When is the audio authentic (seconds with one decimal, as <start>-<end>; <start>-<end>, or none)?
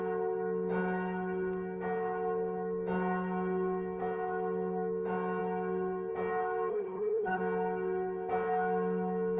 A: 0.0-6.7; 7.4-9.4